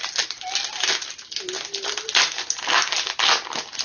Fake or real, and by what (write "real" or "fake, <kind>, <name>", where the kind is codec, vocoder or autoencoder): real